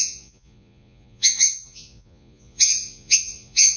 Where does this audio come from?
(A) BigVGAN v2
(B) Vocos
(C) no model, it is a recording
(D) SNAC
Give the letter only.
B